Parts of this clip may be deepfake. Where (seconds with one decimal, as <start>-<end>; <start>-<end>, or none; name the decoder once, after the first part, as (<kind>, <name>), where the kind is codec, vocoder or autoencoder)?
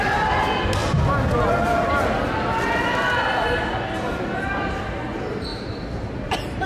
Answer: 5.5-6.7 (vocoder, BigVGAN v2)